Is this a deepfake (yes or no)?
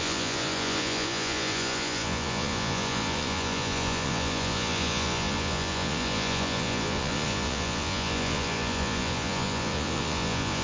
yes